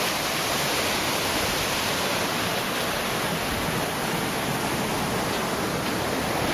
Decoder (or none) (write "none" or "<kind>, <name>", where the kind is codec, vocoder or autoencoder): none